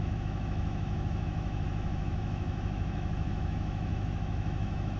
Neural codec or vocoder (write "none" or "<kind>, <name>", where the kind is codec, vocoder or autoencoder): autoencoder, DAC-VAE